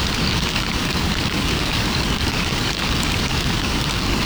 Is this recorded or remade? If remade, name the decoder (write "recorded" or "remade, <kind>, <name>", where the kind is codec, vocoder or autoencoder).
remade, codec, DAC